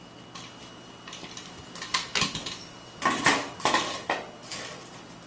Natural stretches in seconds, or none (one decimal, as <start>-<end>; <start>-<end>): 0.0-5.3